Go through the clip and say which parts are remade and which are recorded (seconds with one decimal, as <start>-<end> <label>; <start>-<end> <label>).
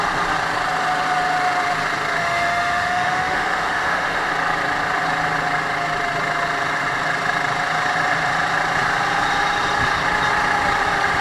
0.0-2.2 recorded; 2.2-4.3 remade; 4.3-11.2 recorded